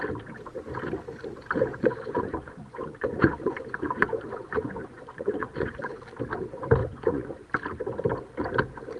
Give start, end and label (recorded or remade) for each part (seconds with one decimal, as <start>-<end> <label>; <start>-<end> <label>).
0.0-1.7 recorded; 1.7-6.0 remade; 6.0-6.8 recorded; 6.8-7.4 remade; 7.4-9.0 recorded